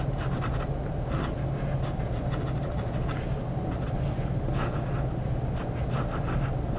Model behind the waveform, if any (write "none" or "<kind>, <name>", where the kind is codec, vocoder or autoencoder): none